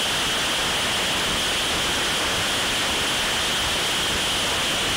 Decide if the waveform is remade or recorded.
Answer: recorded